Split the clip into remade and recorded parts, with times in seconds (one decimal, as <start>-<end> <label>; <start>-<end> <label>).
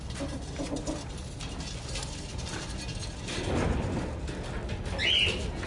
0.0-5.7 recorded